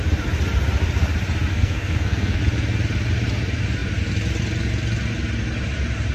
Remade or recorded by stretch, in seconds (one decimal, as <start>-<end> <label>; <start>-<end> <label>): 0.0-1.5 recorded; 1.5-2.4 remade; 2.4-6.1 recorded